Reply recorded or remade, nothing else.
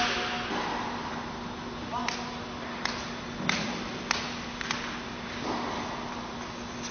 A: recorded